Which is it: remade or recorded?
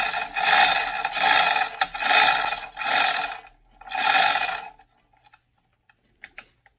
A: recorded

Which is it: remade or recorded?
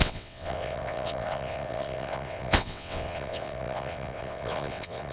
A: remade